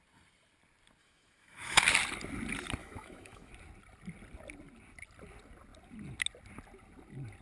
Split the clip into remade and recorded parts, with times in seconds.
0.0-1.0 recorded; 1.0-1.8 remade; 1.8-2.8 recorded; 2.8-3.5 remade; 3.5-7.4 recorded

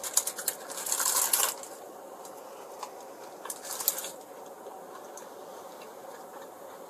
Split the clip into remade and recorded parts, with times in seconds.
0.0-5.5 recorded; 5.5-6.9 remade

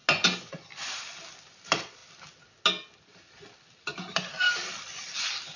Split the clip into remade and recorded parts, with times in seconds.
0.0-5.6 recorded

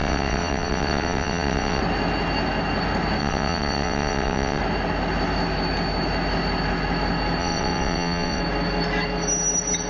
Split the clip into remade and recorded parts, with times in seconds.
0.0-1.8 remade; 1.8-3.2 recorded; 3.2-4.6 remade; 4.6-7.4 recorded; 7.4-8.4 remade; 8.4-9.9 recorded